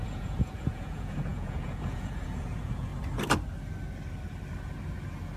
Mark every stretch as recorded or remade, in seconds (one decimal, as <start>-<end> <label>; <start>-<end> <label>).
0.0-2.9 remade; 2.9-5.4 recorded